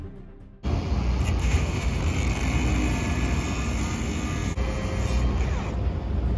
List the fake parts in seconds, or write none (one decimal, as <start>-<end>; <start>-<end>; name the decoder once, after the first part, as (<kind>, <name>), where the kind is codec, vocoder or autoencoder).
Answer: 1.4-2.0 (autoencoder, DAC-VAE)